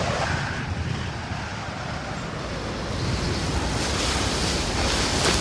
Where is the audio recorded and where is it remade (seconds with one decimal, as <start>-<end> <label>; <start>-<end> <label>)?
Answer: 0.0-1.5 recorded; 1.5-4.7 remade; 4.7-5.4 recorded